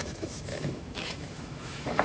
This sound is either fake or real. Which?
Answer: fake